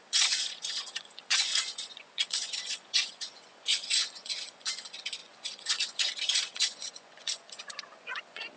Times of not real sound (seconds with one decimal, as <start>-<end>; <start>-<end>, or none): 0.0-8.6